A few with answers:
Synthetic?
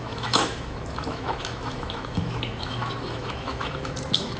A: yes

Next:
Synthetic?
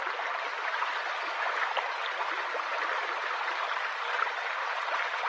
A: no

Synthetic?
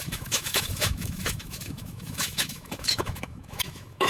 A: yes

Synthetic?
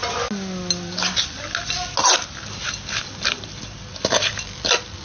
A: no